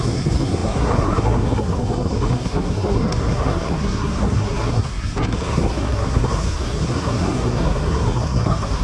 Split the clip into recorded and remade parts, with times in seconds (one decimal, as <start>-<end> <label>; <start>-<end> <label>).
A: 0.0-8.8 remade